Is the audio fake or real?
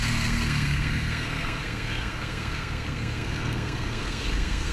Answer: fake